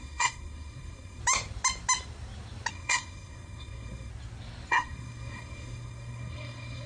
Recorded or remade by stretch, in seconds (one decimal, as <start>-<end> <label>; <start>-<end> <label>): 0.0-1.2 remade; 1.2-2.7 recorded; 2.7-4.1 remade; 4.1-4.7 recorded; 4.7-6.9 remade